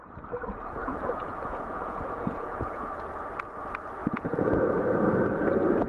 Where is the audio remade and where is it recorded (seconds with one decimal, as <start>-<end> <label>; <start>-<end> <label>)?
0.0-0.8 recorded; 0.8-2.9 remade; 2.9-4.0 recorded; 4.0-4.7 remade; 4.7-5.9 recorded